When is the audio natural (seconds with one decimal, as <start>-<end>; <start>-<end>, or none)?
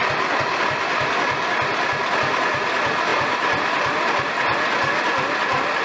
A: 0.0-5.8